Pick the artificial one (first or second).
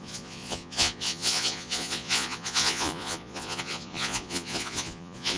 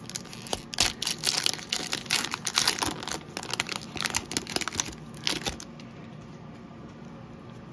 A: first